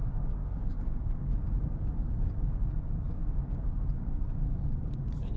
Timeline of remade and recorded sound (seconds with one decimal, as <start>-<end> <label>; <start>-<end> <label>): 0.0-1.4 remade; 1.4-2.6 recorded; 2.6-3.8 remade; 3.8-5.4 recorded